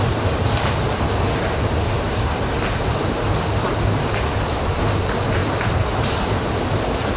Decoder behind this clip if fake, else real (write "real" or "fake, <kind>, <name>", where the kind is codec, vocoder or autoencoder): real